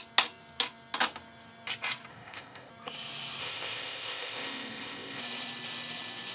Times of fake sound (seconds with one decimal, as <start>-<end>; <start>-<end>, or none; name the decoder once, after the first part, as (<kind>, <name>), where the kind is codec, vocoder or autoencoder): 2.1-2.7 (codec, ZipCodec); 3.4-5.2